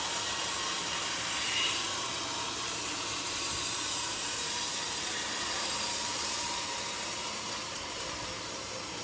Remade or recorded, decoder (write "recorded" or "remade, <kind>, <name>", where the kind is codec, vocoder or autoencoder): remade, vocoder, BigVGAN v2